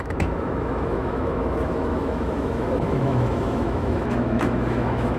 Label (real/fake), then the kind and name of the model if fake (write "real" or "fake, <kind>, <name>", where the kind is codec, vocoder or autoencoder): fake, autoencoder, DAC-VAE